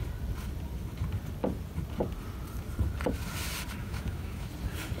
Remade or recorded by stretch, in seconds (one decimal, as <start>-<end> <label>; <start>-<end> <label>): 0.0-3.8 recorded; 3.8-4.5 remade; 4.5-5.0 recorded